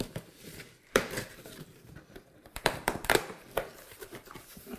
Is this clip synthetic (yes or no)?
yes